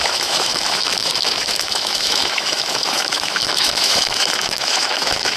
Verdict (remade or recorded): remade